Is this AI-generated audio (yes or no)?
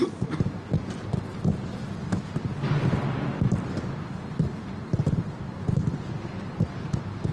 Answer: no